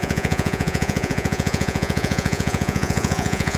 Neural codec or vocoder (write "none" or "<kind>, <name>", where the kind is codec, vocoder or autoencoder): vocoder, Vocos